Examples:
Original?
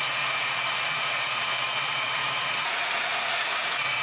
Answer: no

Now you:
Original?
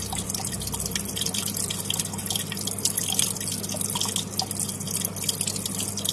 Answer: yes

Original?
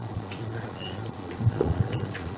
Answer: no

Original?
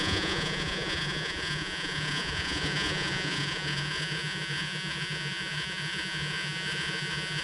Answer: no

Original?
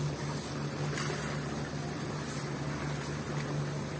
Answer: yes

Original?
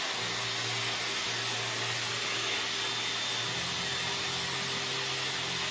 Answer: yes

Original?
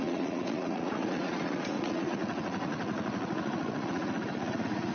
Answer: no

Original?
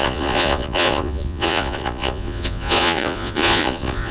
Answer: no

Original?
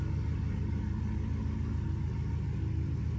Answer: yes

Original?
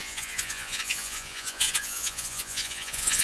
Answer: no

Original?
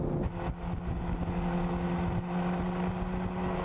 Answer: yes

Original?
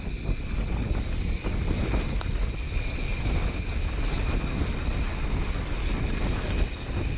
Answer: yes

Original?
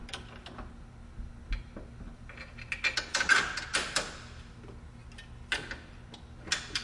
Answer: yes